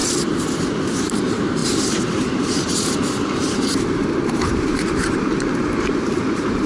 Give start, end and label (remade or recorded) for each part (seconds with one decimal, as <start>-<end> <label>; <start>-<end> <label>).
0.0-1.0 recorded; 1.0-6.7 remade